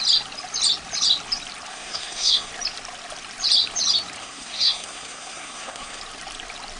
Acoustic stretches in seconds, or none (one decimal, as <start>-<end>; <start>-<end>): 0.0-1.7; 2.5-4.2; 6.0-6.8